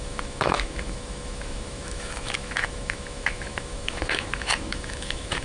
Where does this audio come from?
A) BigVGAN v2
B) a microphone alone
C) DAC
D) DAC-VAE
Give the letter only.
D